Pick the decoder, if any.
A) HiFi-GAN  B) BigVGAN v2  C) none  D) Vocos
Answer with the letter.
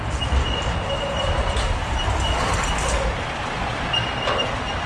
C